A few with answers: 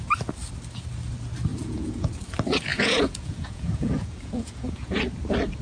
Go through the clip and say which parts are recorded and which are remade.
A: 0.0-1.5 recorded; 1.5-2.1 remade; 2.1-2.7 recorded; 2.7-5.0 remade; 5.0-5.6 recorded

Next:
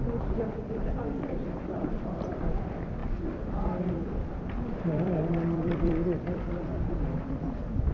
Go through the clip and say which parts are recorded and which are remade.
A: 0.0-3.0 remade; 3.0-3.5 recorded; 3.5-7.9 remade

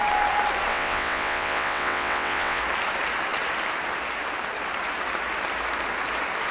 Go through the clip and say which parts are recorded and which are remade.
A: 0.0-0.7 recorded; 0.7-2.6 remade; 2.6-6.5 recorded

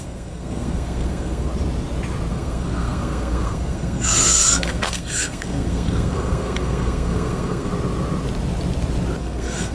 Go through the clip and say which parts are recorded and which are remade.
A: 0.0-1.5 remade; 1.5-2.3 recorded; 2.3-7.7 remade; 7.7-9.2 recorded; 9.2-9.7 remade

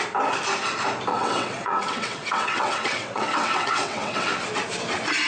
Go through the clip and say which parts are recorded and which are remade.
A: 0.0-1.1 recorded; 1.1-4.3 remade; 4.3-5.3 recorded

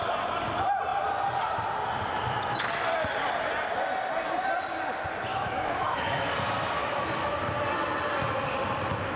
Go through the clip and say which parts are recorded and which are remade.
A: 0.0-5.3 recorded; 5.3-6.3 remade; 6.3-6.8 recorded; 6.8-7.4 remade; 7.4-9.2 recorded

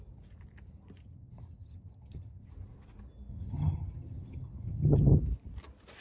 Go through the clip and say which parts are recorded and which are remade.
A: 0.0-1.0 recorded; 1.0-2.5 remade; 2.5-3.3 recorded; 3.3-5.2 remade; 5.2-6.0 recorded

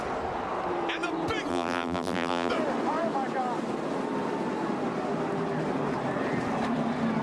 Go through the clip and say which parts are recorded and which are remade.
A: 0.0-1.5 recorded; 1.5-2.5 remade; 2.5-7.2 recorded